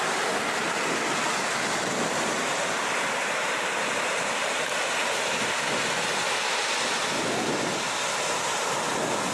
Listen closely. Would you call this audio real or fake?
real